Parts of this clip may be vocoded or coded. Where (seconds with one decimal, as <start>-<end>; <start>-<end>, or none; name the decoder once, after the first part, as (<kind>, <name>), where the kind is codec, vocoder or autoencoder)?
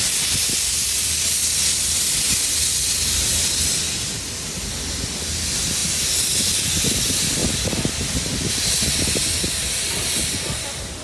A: none